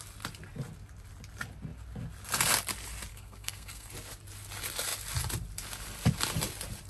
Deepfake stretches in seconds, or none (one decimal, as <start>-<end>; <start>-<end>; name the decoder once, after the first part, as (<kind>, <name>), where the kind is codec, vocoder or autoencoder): 3.1-3.9 (codec, SNAC)